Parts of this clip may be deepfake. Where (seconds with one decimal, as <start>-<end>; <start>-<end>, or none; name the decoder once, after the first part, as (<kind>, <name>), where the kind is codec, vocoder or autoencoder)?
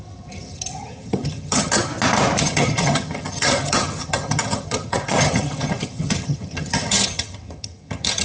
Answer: 0.0-1.9 (vocoder, HiFi-GAN); 2.4-8.2